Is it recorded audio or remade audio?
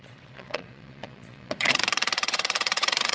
remade